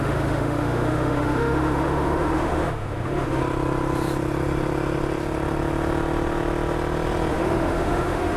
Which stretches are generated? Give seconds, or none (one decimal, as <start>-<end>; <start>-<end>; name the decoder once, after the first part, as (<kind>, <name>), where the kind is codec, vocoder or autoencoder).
0.0-3.4 (autoencoder, DAC-VAE); 7.3-8.4